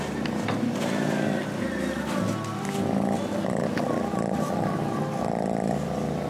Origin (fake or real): real